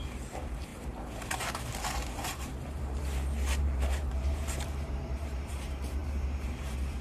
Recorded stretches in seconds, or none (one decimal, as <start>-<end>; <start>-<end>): 3.0-3.6